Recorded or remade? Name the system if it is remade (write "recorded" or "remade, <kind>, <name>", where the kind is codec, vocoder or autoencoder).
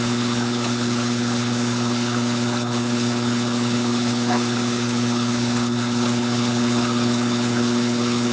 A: remade, codec, HILCodec